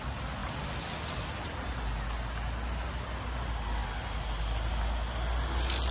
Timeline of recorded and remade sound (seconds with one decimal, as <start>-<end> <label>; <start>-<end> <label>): 0.0-5.9 recorded